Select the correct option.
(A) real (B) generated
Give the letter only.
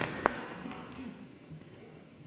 B